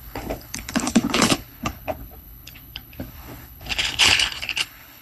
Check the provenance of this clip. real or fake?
fake